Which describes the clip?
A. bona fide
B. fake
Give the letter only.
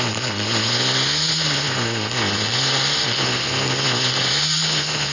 A